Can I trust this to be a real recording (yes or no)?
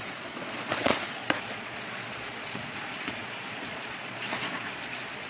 no